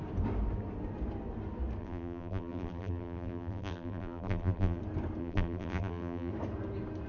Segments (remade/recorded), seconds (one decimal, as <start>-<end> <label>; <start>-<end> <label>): 0.0-1.8 recorded; 1.8-4.8 remade; 4.8-5.2 recorded; 5.2-6.3 remade; 6.3-7.1 recorded

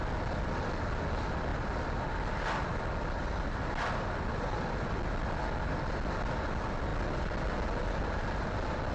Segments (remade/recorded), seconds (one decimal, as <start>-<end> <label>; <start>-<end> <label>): 0.0-8.9 recorded

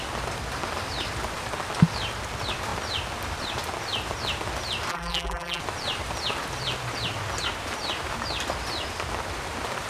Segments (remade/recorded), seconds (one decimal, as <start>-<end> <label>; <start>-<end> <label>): 0.0-4.9 recorded; 4.9-5.6 remade; 5.6-9.9 recorded

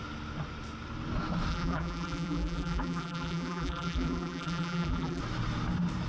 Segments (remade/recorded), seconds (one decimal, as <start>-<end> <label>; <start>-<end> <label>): 0.0-1.5 recorded; 1.5-5.2 remade; 5.2-6.1 recorded

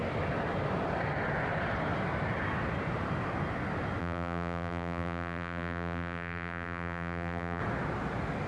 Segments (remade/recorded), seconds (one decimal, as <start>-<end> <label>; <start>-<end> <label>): 0.0-4.0 recorded; 4.0-7.6 remade; 7.6-8.5 recorded

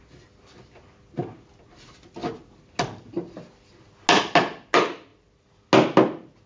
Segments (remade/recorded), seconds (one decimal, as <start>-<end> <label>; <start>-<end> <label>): 0.0-6.5 recorded